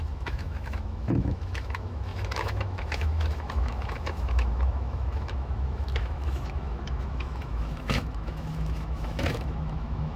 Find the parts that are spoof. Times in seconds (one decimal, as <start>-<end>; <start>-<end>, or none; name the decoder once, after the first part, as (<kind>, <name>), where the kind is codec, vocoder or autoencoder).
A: 0.0-10.2 (autoencoder, DAC-VAE)